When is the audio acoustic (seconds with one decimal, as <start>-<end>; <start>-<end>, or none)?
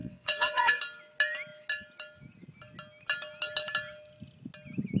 0.8-5.0